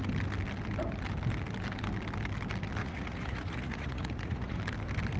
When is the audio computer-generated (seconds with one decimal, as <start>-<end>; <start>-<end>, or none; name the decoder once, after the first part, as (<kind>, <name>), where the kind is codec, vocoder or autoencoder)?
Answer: 2.8-4.6 (vocoder, Vocos)